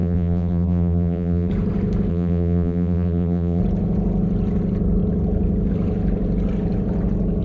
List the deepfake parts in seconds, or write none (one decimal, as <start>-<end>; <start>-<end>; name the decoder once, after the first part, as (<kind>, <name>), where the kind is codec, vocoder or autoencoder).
0.0-1.5 (vocoder, BigVGAN v2); 2.1-3.6